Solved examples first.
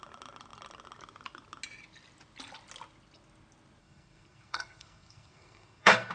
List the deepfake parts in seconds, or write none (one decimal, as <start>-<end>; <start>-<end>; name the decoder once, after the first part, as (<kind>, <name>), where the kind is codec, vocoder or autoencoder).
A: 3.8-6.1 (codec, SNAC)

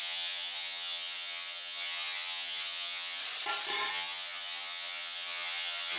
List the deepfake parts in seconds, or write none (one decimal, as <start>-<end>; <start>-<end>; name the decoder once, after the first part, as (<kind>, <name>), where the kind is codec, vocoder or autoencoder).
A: 0.0-3.2 (vocoder, HiFi-GAN); 3.9-6.0

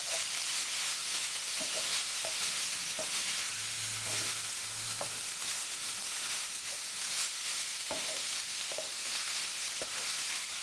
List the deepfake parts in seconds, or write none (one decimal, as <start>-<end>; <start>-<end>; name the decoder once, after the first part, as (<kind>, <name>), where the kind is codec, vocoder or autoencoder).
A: 0.5-10.6 (autoencoder, DAC-VAE)